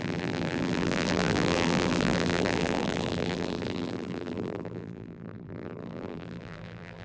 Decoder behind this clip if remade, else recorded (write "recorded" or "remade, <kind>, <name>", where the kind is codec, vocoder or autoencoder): remade, vocoder, BigVGAN v2